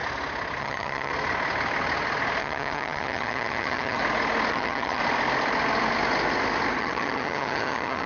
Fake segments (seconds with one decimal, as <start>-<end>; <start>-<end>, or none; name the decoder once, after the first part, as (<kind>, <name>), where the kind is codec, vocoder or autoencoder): 0.6-1.1 (vocoder, HiFi-GAN); 2.4-4.0; 4.5-5.0; 6.8-8.1